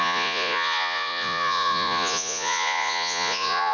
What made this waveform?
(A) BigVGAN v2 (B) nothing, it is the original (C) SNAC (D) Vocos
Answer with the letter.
D